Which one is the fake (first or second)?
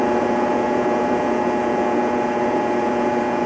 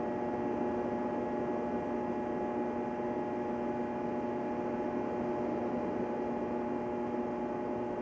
first